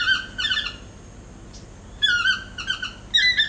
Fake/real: real